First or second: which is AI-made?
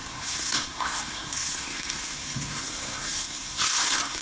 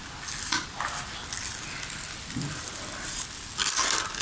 first